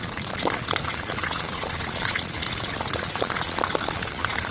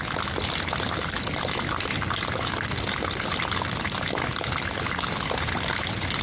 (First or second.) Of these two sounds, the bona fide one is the second